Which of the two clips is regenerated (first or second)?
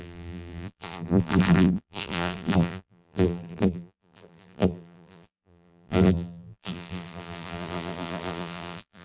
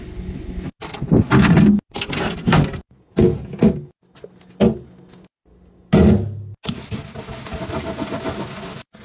first